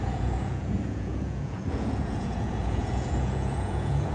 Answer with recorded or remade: remade